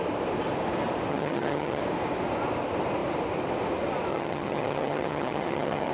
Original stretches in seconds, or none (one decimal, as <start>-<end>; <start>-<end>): 0.0-1.1; 1.8-4.1